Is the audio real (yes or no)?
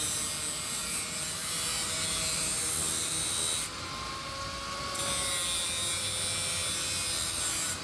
yes